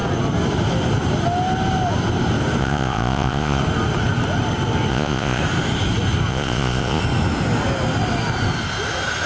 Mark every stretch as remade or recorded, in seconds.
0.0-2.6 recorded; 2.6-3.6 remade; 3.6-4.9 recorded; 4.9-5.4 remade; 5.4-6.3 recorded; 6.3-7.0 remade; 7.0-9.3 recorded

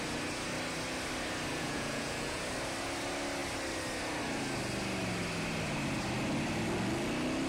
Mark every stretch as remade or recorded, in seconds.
0.0-1.5 recorded; 1.5-2.4 remade; 2.4-7.5 recorded

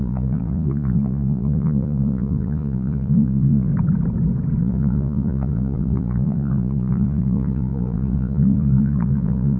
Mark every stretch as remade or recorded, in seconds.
0.0-3.7 remade; 3.7-4.6 recorded; 4.6-9.6 remade

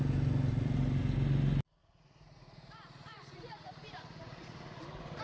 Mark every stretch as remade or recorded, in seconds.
0.0-1.8 recorded; 1.8-5.2 remade